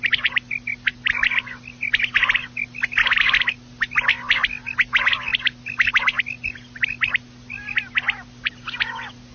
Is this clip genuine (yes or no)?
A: yes